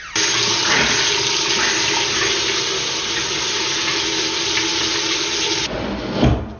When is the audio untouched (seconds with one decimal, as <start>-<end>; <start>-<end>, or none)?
0.0-6.6